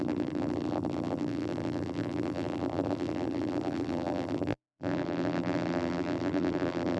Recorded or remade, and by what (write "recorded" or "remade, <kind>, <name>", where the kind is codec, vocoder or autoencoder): remade, vocoder, BigVGAN v2